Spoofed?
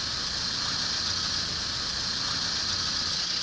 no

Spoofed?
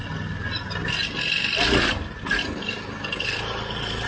no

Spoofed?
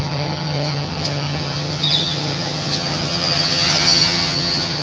yes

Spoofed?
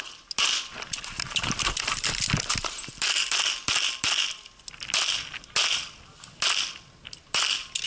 no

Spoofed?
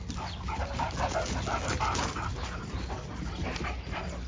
no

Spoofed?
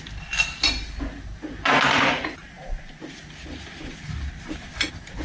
no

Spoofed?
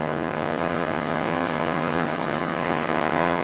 yes